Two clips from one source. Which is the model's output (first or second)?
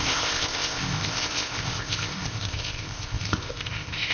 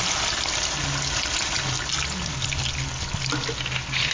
first